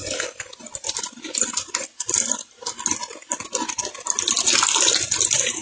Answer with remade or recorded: recorded